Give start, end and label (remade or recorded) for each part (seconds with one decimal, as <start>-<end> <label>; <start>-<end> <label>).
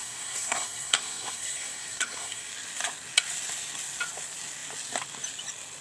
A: 0.0-2.5 remade; 2.5-5.8 recorded